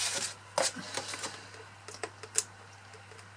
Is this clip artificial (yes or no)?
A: no